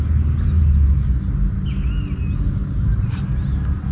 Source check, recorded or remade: recorded